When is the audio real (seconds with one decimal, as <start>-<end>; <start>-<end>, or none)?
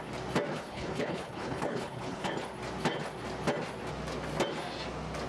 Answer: 0.0-0.5; 2.3-5.3